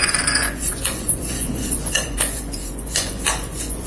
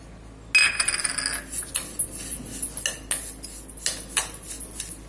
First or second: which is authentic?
second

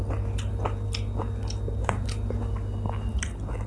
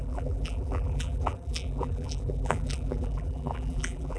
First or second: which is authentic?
first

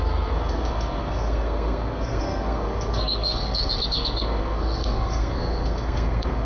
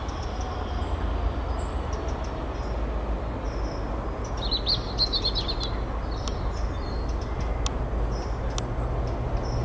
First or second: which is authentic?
second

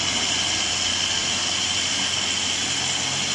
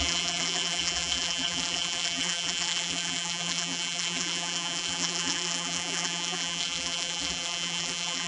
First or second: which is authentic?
first